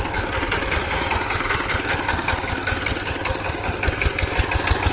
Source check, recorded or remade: recorded